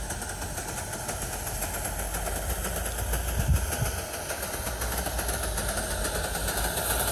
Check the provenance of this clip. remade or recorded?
recorded